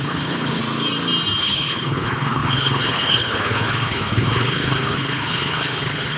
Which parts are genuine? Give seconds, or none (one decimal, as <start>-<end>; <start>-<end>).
0.6-1.4